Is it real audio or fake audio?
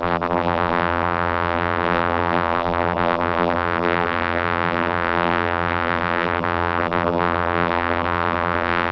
fake